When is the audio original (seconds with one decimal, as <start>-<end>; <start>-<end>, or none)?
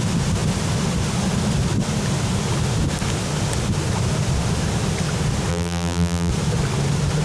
0.0-5.5; 6.3-7.2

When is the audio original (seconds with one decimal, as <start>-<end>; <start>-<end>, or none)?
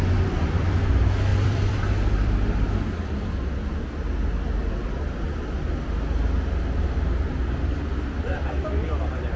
0.0-1.3; 3.3-9.4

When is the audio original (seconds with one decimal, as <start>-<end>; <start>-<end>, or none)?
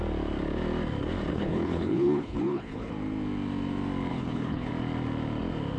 0.0-1.3; 2.9-4.1; 4.7-5.8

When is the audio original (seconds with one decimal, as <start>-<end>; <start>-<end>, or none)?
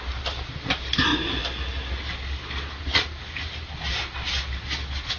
0.0-5.2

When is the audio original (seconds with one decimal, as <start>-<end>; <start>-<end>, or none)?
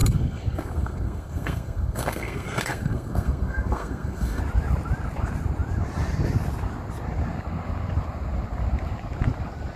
4.4-9.8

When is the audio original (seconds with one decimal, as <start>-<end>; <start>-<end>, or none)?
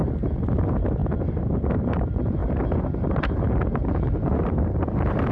0.0-0.5; 1.0-1.6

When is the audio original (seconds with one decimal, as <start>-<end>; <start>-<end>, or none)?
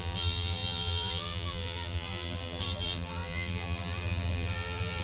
none